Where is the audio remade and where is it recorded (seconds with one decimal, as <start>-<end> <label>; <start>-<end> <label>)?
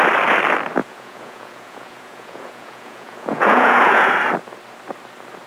0.0-0.8 recorded; 0.8-4.1 remade; 4.1-5.5 recorded